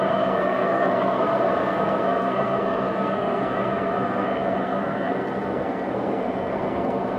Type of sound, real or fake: fake